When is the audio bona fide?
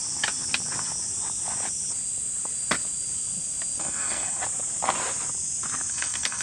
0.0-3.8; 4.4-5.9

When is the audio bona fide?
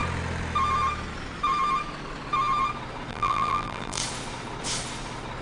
0.0-3.1; 4.0-5.4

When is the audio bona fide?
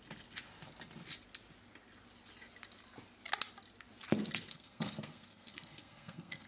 0.0-4.5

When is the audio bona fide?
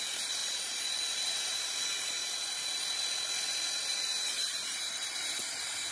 0.0-0.4; 2.8-3.9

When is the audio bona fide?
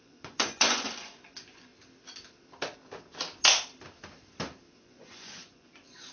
1.7-4.7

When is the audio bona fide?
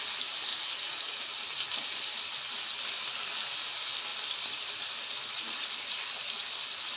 0.0-7.0